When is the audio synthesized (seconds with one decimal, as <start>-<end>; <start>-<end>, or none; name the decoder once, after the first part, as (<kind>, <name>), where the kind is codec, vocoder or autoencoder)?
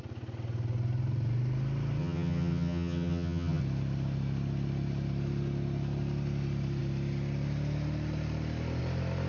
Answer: 2.0-3.6 (vocoder, HiFi-GAN)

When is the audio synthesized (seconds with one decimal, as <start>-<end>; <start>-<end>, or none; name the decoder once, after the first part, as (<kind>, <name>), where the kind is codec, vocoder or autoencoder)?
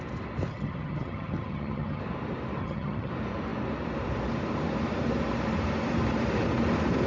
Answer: 0.5-2.0 (vocoder, HiFi-GAN); 2.6-3.1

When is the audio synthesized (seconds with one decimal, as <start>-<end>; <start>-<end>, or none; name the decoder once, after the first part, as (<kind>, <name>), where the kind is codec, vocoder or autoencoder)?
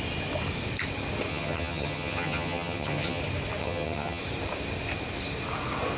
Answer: 1.3-3.2 (vocoder, HiFi-GAN); 3.6-4.2